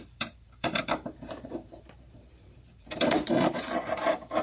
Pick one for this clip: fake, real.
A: fake